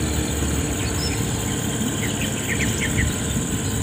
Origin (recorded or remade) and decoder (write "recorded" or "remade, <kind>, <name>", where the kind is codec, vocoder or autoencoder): recorded